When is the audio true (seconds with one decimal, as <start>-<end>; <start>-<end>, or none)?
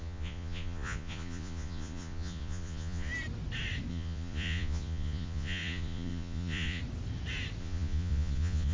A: 3.1-3.9; 6.8-7.6